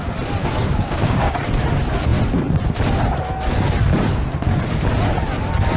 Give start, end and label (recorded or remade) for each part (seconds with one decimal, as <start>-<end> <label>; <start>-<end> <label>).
0.0-0.4 recorded; 0.4-1.4 remade; 1.4-5.8 recorded